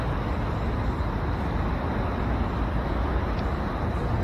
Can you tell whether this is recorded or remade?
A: recorded